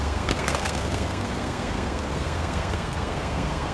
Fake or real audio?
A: fake